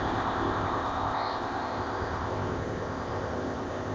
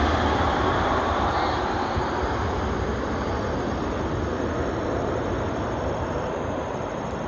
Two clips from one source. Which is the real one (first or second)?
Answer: second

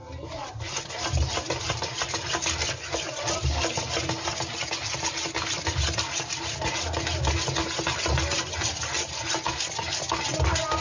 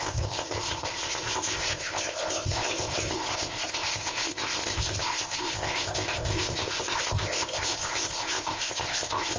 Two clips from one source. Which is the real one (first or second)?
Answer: first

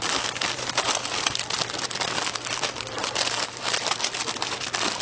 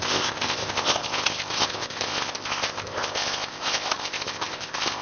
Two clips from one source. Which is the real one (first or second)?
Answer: first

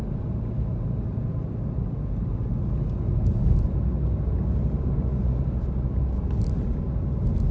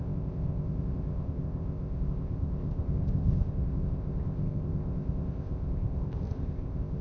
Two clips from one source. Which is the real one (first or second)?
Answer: first